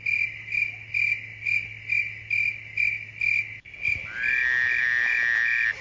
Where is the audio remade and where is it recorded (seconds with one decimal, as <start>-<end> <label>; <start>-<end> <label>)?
0.0-5.8 recorded